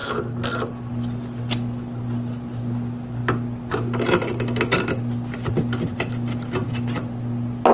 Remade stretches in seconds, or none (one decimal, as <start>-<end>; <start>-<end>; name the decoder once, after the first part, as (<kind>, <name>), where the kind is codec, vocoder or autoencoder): none